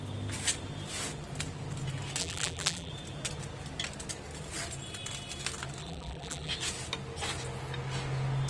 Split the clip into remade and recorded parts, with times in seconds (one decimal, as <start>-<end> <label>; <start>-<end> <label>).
0.0-2.2 recorded; 2.2-2.9 remade; 2.9-5.8 recorded; 5.8-6.5 remade; 6.5-8.5 recorded